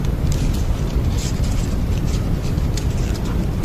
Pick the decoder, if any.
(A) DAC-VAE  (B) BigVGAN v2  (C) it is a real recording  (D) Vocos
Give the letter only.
B